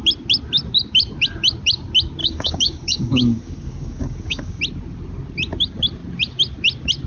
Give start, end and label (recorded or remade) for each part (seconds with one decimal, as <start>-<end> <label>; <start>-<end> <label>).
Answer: 0.0-2.2 recorded; 2.2-4.6 remade; 4.6-7.1 recorded